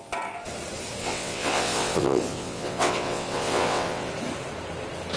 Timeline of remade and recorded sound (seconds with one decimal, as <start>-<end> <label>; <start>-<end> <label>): 0.0-1.0 recorded; 1.0-4.1 remade; 4.1-5.2 recorded